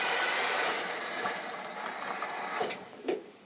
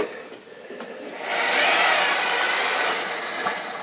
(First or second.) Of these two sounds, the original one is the second